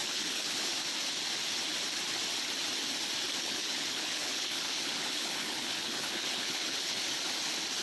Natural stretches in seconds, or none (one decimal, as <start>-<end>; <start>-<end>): 0.7-3.4; 7.0-7.8